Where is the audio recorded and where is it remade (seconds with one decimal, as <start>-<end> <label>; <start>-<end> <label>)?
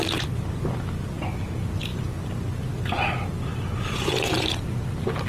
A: 0.0-5.3 recorded